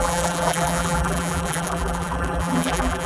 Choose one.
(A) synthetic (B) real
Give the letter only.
A